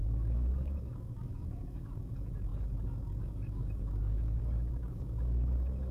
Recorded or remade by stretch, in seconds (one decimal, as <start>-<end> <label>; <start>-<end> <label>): 0.0-5.9 remade